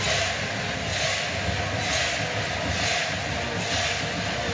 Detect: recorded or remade recorded